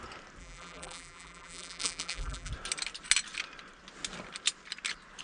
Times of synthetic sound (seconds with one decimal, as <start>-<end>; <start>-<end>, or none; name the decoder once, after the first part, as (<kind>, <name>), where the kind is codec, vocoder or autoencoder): 0.4-2.5 (vocoder, BigVGAN v2)